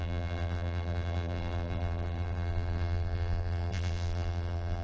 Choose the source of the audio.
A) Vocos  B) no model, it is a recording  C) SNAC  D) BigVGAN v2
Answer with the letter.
D